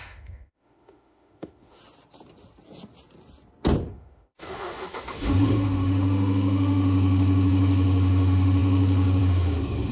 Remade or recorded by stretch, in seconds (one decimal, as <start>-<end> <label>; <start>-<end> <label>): 0.0-1.8 remade; 1.8-3.9 recorded; 3.9-9.9 remade